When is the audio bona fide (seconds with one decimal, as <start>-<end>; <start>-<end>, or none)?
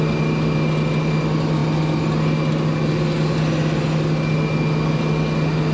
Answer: 0.0-5.7